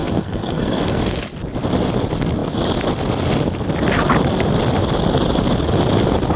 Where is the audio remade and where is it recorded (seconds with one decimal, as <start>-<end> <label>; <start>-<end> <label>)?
0.0-1.2 remade; 1.2-6.4 recorded